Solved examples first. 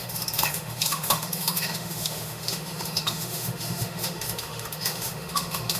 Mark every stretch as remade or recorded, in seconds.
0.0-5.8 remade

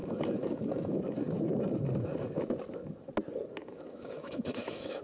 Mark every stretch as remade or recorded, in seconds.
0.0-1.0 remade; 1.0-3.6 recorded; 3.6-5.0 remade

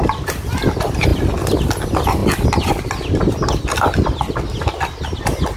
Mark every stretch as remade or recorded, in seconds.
0.0-5.6 recorded